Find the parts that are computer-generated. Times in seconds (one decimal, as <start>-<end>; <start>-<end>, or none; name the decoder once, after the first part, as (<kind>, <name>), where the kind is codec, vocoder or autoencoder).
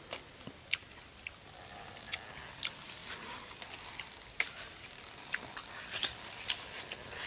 none